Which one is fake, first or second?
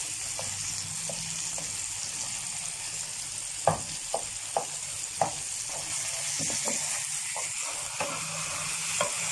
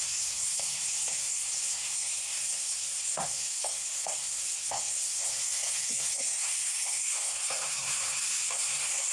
second